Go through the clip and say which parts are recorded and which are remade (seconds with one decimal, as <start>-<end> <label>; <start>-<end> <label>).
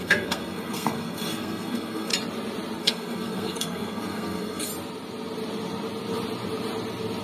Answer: 0.0-2.1 remade; 2.1-2.8 recorded; 2.8-4.7 remade; 4.7-7.2 recorded